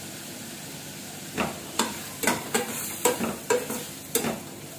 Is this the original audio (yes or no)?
yes